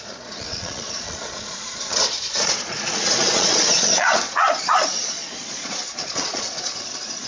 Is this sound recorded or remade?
remade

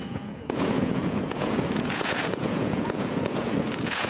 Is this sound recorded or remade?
remade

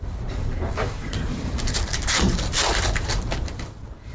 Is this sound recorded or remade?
remade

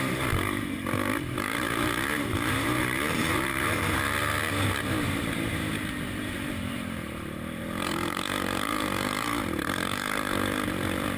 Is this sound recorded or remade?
remade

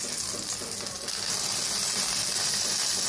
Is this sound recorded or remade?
recorded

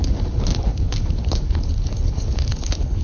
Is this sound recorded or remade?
remade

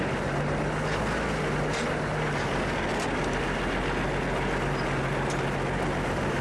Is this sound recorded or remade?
recorded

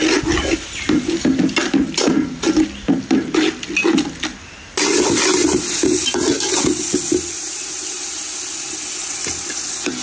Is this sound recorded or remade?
recorded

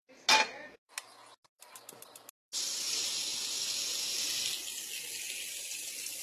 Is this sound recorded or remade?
recorded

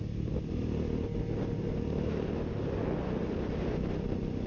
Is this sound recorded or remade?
recorded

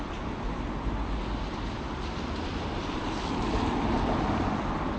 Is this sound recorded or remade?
recorded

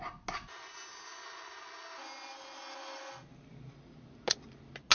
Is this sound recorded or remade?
recorded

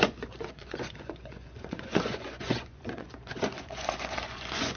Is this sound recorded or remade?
remade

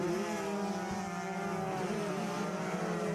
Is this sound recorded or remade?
recorded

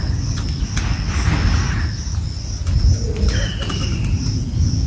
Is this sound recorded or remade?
recorded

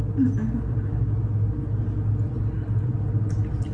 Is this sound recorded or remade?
recorded